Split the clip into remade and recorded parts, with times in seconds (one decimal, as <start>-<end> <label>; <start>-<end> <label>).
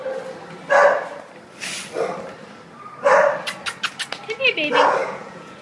0.0-5.0 recorded; 5.0-5.6 remade